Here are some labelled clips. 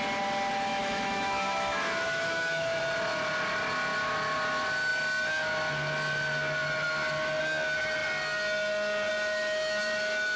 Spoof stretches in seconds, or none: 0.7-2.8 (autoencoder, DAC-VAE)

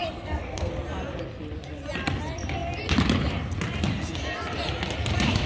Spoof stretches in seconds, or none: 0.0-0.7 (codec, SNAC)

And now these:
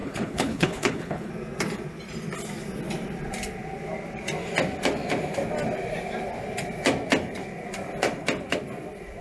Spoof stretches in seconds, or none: 0.0-1.3 (codec, HILCodec)

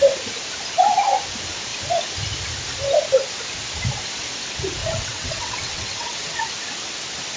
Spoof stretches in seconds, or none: 4.8-6.4 (vocoder, WaveNeXt)

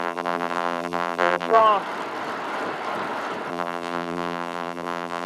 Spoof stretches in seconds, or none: 0.0-1.6 (vocoder, BigVGAN v2); 3.5-5.3